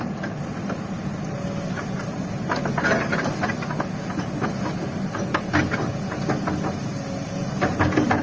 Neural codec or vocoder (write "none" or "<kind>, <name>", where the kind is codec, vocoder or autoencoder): none